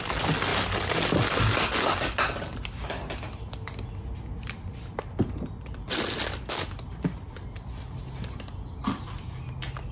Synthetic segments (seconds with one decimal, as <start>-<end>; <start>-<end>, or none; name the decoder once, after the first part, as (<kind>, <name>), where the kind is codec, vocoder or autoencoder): none